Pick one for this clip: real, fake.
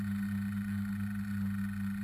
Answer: real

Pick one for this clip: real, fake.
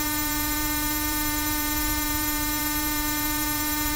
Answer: fake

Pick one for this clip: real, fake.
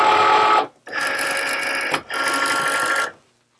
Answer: real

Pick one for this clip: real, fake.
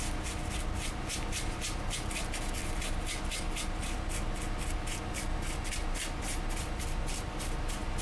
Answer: real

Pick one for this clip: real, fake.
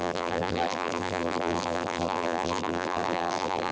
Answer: fake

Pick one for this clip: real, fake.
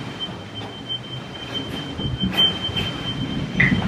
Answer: real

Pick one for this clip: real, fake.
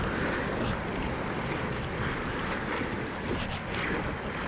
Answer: real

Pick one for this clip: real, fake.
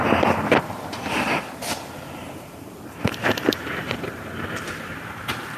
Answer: fake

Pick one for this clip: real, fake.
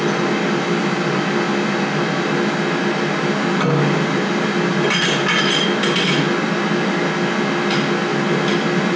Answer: real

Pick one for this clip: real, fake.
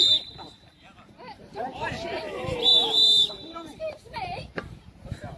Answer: fake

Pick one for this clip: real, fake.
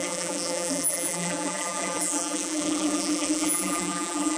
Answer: fake